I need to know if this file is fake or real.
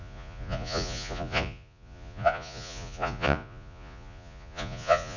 fake